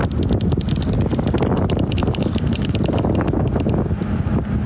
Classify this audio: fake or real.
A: real